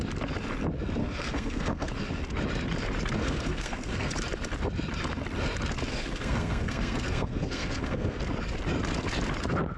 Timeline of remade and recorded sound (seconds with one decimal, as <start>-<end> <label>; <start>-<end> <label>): 0.0-1.0 recorded; 1.0-1.9 remade; 1.9-3.2 recorded; 3.2-4.1 remade; 4.1-5.9 recorded; 5.9-8.2 remade; 8.2-9.8 recorded